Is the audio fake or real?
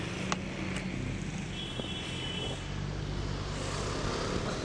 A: real